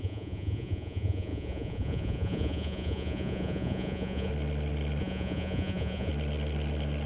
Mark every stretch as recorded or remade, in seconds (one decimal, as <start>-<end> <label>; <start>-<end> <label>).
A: 0.0-4.3 remade; 4.3-5.0 recorded; 5.0-6.1 remade; 6.1-7.1 recorded